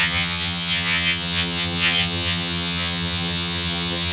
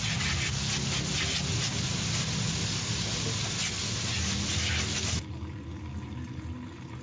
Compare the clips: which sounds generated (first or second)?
first